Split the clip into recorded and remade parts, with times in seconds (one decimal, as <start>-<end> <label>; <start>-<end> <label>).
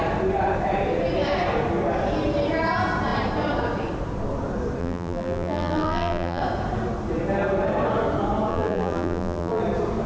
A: 0.0-4.8 recorded; 4.8-6.4 remade; 6.4-8.5 recorded; 8.5-9.6 remade; 9.6-10.1 recorded